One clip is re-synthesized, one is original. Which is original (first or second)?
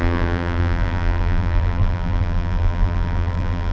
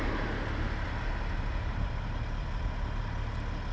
second